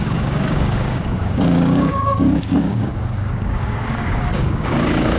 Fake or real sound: fake